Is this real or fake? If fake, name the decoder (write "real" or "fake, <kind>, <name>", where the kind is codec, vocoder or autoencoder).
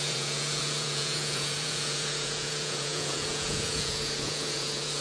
fake, vocoder, Vocos